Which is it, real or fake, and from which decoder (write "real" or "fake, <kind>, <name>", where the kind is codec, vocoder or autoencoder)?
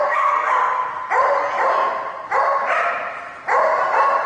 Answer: real